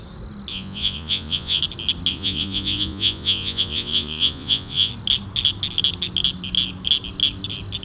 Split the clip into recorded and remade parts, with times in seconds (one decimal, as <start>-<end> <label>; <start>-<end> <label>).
0.0-0.5 recorded; 0.5-1.6 remade; 1.6-2.1 recorded; 2.1-4.9 remade; 4.9-7.8 recorded